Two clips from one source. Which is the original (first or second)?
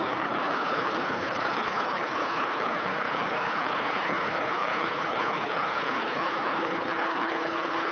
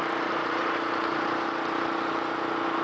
second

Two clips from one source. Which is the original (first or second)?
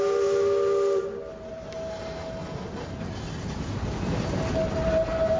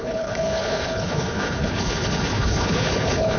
first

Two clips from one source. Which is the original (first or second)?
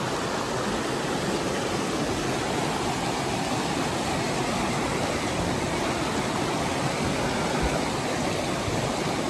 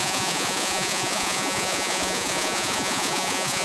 first